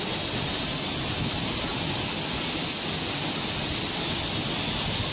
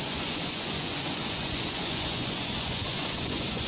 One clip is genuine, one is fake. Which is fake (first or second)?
second